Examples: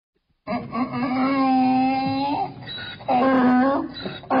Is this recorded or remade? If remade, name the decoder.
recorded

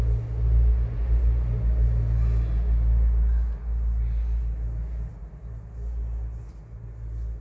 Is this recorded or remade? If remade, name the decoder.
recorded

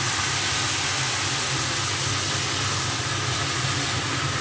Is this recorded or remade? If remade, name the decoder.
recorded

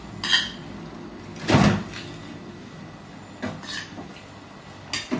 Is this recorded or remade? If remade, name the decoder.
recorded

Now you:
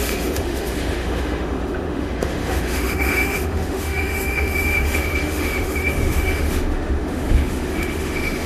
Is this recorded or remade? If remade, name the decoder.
remade, autoencoder, DAC-VAE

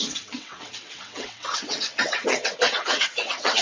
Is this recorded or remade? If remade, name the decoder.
remade, vocoder, WaveNeXt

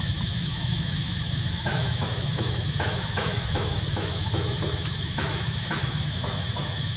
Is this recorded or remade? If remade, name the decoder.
remade, autoencoder, DAC-VAE